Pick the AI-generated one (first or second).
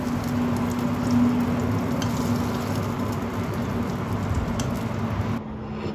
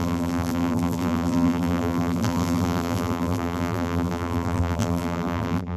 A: second